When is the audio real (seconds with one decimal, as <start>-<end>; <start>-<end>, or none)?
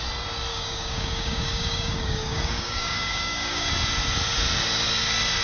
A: 0.0-0.5; 3.7-5.4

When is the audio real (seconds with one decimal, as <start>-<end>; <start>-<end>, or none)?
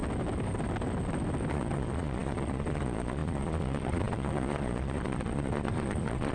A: 0.0-1.5